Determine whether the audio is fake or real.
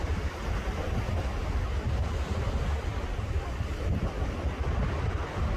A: real